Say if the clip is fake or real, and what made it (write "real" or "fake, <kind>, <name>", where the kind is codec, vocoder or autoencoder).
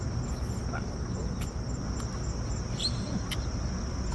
real